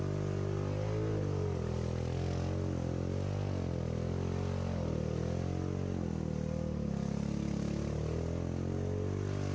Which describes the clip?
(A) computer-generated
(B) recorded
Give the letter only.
B